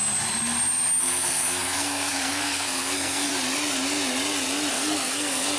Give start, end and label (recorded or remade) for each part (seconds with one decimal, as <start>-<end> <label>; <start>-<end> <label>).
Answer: 0.0-1.0 recorded; 1.0-3.3 remade; 3.3-4.7 recorded; 4.7-5.6 remade